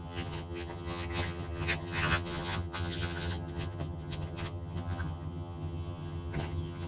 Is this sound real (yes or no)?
no